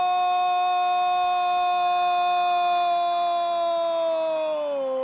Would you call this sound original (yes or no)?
yes